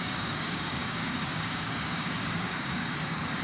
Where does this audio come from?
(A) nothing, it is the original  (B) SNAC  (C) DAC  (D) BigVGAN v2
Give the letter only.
C